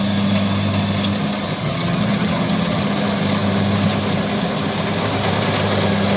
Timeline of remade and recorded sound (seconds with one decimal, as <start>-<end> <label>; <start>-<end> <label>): 0.0-1.6 recorded; 1.6-2.8 remade; 2.8-6.2 recorded